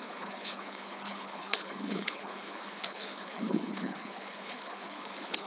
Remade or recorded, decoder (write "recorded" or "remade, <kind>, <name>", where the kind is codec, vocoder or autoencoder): remade, codec, HILCodec